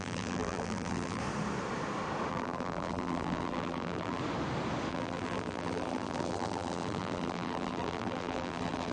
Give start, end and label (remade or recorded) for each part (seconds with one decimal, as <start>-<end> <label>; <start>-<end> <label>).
0.0-1.2 remade; 1.2-2.3 recorded; 2.3-4.2 remade; 4.2-4.9 recorded; 4.9-8.9 remade